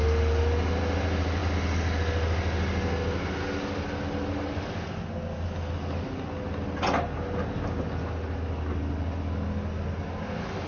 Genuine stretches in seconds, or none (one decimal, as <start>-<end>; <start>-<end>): 0.0-10.7